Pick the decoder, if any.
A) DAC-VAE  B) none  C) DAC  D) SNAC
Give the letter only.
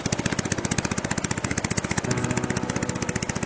B